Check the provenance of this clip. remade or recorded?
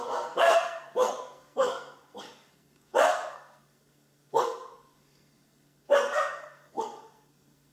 remade